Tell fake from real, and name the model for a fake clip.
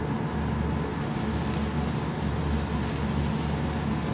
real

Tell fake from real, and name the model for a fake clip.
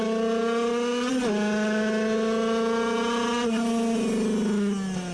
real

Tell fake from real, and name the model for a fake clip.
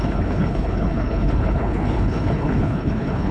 fake, codec, HILCodec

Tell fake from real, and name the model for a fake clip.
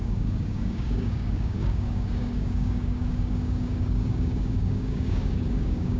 fake, codec, DAC